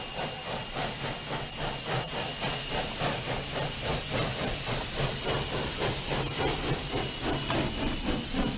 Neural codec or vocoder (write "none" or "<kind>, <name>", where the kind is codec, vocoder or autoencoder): none